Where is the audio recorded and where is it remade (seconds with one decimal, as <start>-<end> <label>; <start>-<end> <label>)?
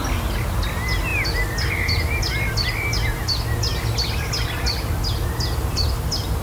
0.0-6.4 recorded